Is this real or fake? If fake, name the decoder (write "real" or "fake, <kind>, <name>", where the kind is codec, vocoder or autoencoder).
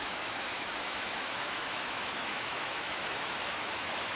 fake, autoencoder, DAC-VAE